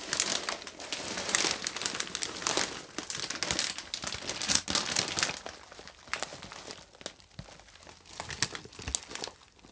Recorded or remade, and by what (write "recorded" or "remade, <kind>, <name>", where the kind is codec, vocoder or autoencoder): recorded